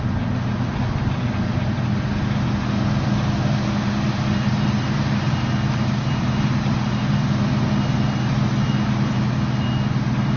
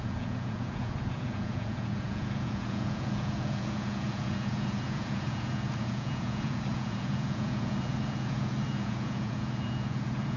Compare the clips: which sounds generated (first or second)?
second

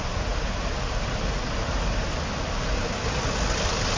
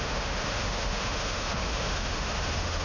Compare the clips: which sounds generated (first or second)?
second